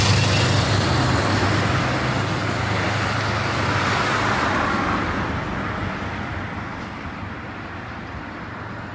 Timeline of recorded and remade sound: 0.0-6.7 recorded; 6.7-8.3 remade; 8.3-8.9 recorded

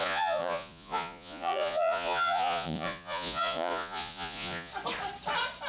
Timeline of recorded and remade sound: 0.0-4.7 remade; 4.7-5.7 recorded

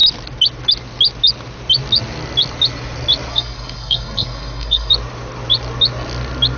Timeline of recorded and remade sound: 0.0-3.3 recorded; 3.3-4.9 remade; 4.9-6.6 recorded

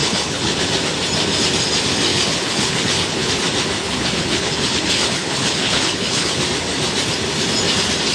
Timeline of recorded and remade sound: 0.0-0.7 remade; 0.7-2.1 recorded; 2.1-3.3 remade; 3.3-3.8 recorded; 3.8-6.4 remade; 6.4-8.1 recorded

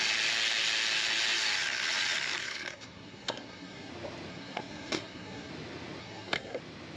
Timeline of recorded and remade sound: 0.0-2.4 recorded; 2.4-3.9 remade; 3.9-4.3 recorded; 4.3-5.5 remade; 5.5-6.0 recorded; 6.0-6.6 remade; 6.6-7.0 recorded

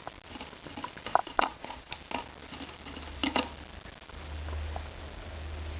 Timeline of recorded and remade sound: 0.0-1.2 recorded; 1.2-1.9 remade; 1.9-5.8 recorded

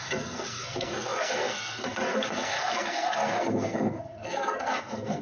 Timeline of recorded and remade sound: 0.0-5.2 remade

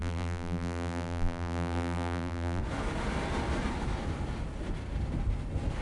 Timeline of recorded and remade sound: 0.0-2.6 remade; 2.6-5.8 recorded